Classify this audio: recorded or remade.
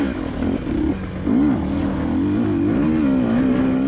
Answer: recorded